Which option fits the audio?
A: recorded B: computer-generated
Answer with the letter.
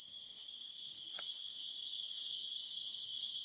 B